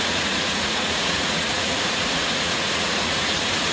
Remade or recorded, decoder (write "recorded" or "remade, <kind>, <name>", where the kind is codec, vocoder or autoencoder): remade, vocoder, Vocos